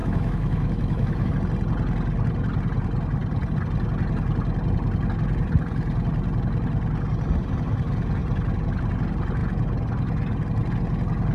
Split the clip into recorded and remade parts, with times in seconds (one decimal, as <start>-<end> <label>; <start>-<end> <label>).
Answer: 0.0-1.3 remade; 1.3-11.3 recorded